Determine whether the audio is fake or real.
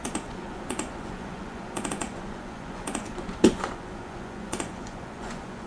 fake